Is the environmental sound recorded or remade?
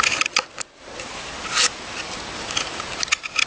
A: recorded